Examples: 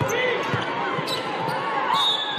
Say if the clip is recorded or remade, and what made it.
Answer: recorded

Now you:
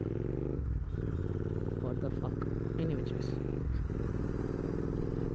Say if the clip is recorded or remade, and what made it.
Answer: recorded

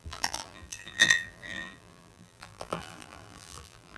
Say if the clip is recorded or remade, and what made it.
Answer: remade, vocoder, BigVGAN v2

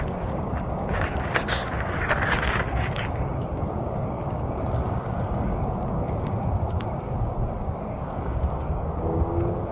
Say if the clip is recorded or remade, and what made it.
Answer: remade, codec, DAC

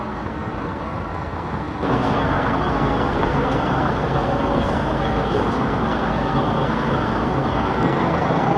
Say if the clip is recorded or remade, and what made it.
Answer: remade, codec, SNAC